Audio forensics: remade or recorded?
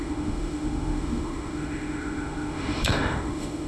remade